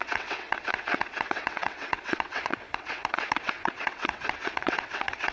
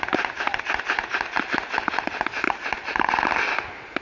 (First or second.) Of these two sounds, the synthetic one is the first